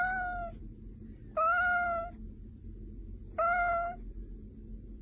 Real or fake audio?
real